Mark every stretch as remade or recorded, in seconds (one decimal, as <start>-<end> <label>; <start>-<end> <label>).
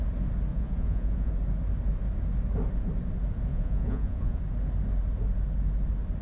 0.0-0.5 recorded; 0.5-1.3 remade; 1.3-3.5 recorded; 3.5-4.4 remade; 4.4-6.2 recorded